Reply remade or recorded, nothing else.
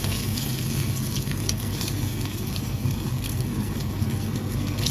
remade